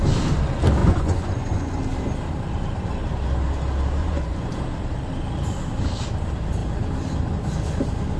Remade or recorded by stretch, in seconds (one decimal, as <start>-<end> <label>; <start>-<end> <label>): 0.0-0.8 recorded; 0.8-1.8 remade; 1.8-4.0 recorded; 4.0-4.5 remade; 4.5-8.2 recorded